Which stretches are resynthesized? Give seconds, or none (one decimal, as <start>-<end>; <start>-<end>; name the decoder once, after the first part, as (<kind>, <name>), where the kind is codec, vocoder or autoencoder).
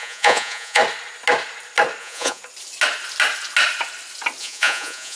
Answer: 0.0-0.8 (vocoder, Vocos); 2.0-2.4; 4.4-5.2